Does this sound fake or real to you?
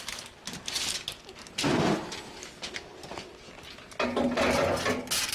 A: real